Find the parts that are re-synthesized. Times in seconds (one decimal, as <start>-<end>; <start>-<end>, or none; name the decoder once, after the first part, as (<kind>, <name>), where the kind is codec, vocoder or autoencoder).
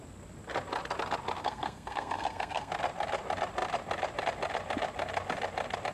1.4-2.7 (codec, SNAC)